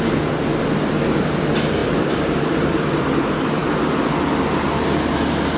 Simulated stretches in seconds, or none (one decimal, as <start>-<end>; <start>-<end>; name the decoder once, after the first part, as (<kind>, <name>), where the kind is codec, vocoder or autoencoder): 1.8-4.1 (vocoder, BigVGAN v2)